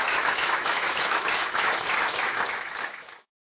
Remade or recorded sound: remade